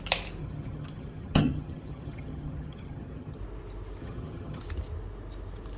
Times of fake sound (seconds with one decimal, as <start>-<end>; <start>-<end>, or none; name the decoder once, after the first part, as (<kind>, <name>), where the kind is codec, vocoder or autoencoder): 0.4-3.4 (vocoder, HiFi-GAN); 4.0-4.6